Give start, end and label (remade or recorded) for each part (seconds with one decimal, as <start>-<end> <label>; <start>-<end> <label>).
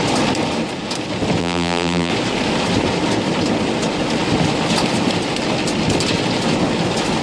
0.0-1.4 recorded; 1.4-2.1 remade; 2.1-7.2 recorded